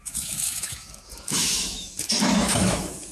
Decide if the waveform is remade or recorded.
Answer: remade